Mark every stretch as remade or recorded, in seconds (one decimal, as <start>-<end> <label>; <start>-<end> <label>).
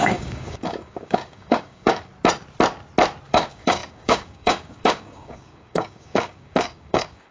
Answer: 0.0-2.1 remade; 2.1-3.3 recorded; 3.3-7.3 remade